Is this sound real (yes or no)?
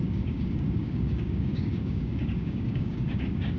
no